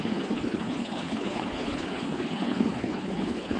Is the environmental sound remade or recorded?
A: remade